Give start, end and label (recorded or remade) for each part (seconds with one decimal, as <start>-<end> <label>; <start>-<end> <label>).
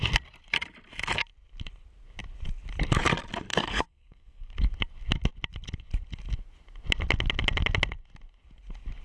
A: 0.0-3.5 recorded; 3.5-4.5 remade; 4.5-9.0 recorded